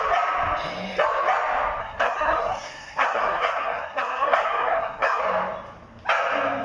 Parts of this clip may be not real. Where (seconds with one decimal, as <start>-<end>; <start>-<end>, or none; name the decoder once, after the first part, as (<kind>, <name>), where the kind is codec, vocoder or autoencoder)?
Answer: 1.8-5.2 (codec, SNAC)

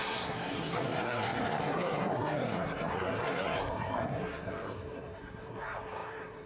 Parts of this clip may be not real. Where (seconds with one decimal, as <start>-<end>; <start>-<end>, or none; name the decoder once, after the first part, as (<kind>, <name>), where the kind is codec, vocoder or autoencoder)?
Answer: 0.0-6.5 (codec, SNAC)

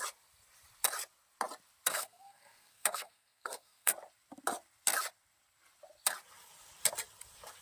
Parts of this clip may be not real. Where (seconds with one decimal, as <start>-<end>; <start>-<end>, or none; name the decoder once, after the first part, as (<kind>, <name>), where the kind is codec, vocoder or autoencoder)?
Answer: 1.9-3.9 (codec, SNAC)

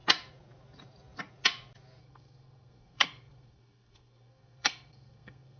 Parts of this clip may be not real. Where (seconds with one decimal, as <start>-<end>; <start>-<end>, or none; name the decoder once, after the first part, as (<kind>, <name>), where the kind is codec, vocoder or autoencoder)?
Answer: 2.0-5.6 (codec, SNAC)

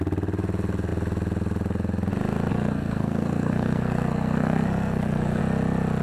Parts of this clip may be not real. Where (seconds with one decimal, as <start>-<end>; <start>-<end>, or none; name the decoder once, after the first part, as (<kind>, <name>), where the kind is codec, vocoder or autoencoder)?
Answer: 2.5-5.4 (codec, SNAC)

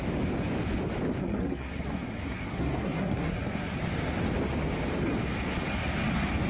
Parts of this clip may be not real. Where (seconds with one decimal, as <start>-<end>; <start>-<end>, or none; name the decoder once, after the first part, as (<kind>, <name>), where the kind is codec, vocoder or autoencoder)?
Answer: 1.2-3.7 (codec, SNAC)